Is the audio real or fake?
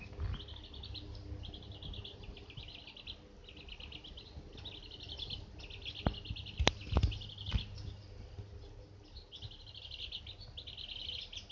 real